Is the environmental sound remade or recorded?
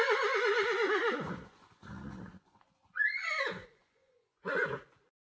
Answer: remade